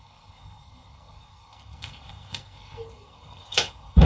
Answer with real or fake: fake